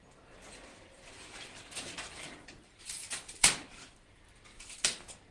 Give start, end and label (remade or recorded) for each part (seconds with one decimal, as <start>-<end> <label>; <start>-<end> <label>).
0.0-0.7 recorded; 0.7-3.9 remade; 3.9-4.5 recorded; 4.5-5.3 remade